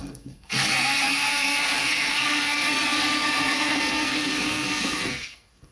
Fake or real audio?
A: fake